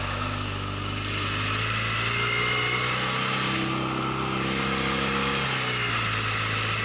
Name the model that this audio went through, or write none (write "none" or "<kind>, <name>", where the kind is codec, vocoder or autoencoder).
none